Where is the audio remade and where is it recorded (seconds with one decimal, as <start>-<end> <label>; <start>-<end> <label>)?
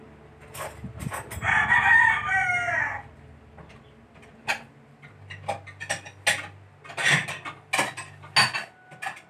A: 0.0-9.3 recorded